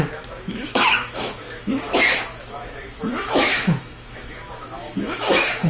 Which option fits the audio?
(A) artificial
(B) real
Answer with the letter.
A